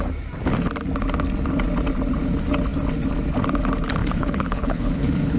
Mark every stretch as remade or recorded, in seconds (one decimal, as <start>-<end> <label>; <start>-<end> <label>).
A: 0.0-4.0 recorded; 4.0-5.4 remade